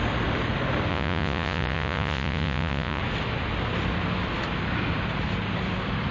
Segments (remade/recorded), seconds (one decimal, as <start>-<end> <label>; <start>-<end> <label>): 0.0-0.9 recorded; 0.9-3.0 remade; 3.0-6.1 recorded